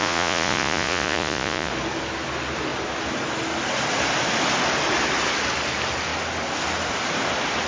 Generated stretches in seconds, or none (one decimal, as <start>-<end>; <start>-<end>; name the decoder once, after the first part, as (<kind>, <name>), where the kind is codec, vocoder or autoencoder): 0.0-1.7 (vocoder, Vocos)